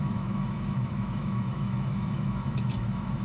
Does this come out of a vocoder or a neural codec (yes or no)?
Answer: yes